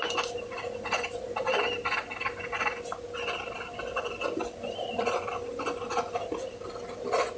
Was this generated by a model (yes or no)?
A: no